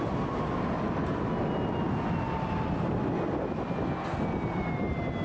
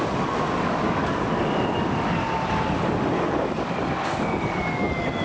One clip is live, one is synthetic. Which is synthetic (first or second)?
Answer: second